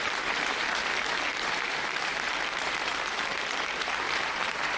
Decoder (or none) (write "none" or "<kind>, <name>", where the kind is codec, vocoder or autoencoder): vocoder, BigVGAN v2